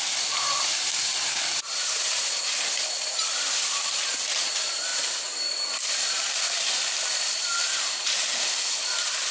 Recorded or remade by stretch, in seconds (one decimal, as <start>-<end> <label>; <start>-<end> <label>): 0.0-9.3 recorded